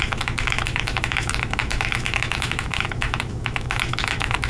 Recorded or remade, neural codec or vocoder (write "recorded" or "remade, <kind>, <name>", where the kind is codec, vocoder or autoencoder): remade, autoencoder, DAC-VAE